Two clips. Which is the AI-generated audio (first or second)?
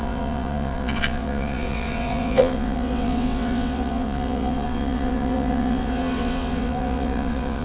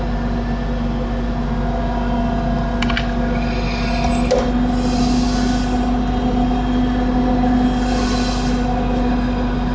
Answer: first